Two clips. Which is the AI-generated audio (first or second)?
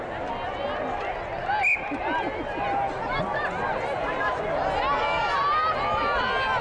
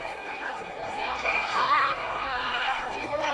second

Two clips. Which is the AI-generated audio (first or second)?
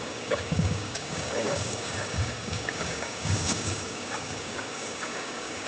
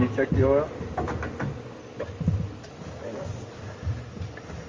first